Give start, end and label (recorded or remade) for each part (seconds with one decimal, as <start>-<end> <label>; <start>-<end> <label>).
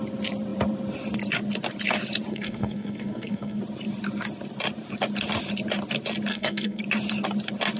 0.0-2.3 recorded; 2.3-3.6 remade; 3.6-6.3 recorded; 6.3-6.8 remade; 6.8-7.8 recorded